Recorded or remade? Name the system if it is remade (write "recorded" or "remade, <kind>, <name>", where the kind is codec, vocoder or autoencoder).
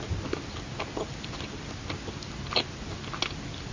recorded